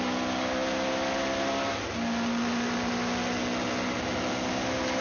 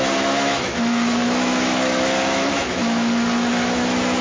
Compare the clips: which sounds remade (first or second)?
second